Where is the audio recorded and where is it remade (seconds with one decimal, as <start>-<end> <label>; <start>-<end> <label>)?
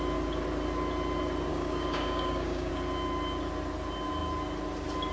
0.0-1.5 recorded; 1.5-2.7 remade; 2.7-5.1 recorded